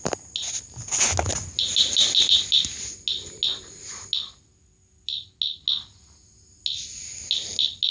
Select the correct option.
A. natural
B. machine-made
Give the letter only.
A